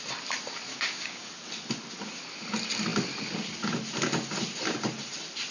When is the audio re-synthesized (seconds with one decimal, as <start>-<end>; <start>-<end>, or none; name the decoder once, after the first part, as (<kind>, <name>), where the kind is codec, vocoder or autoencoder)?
0.7-1.3 (codec, DAC)